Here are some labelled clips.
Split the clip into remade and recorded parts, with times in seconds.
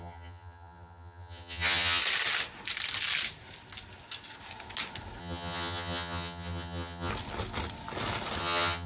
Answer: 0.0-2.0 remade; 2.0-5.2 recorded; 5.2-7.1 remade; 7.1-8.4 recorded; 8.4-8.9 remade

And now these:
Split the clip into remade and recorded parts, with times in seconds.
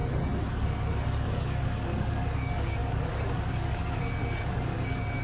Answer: 0.0-0.5 recorded; 0.5-5.2 remade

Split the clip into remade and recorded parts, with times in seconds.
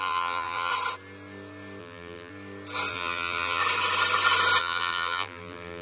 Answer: 0.0-0.7 remade; 0.7-1.8 recorded; 1.8-2.3 remade; 2.3-2.9 recorded; 2.9-3.6 remade; 3.6-4.6 recorded; 4.6-5.8 remade